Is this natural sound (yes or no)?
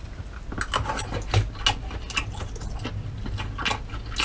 yes